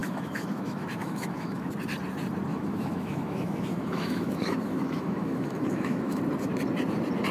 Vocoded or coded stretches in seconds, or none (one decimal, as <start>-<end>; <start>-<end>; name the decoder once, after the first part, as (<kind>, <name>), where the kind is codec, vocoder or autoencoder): 0.0-1.7 (autoencoder, DAC-VAE); 2.5-6.2